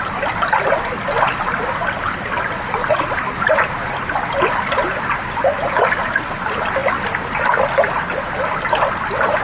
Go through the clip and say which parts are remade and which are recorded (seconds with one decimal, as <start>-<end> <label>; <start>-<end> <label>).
0.0-6.8 remade; 6.8-9.0 recorded; 9.0-9.4 remade